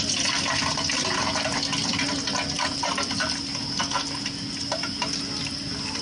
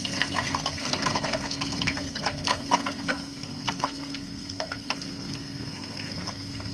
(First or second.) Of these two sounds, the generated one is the second